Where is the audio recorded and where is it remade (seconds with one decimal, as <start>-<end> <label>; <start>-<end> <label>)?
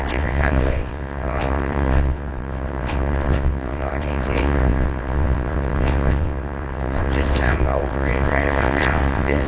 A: 0.0-9.5 remade